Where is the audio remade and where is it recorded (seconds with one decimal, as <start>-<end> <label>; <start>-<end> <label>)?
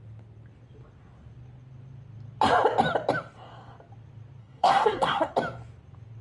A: 0.0-4.4 recorded; 4.4-5.3 remade; 5.3-6.2 recorded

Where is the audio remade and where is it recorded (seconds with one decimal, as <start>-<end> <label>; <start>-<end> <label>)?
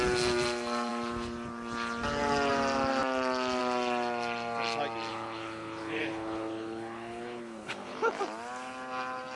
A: 0.0-5.1 recorded; 5.1-8.2 remade; 8.2-9.4 recorded